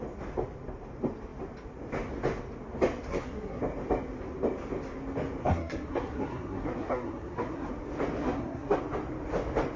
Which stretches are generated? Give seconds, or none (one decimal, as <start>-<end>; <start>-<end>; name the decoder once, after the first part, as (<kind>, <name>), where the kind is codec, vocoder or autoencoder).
3.1-3.6 (codec, SNAC); 5.4-7.7; 8.2-8.8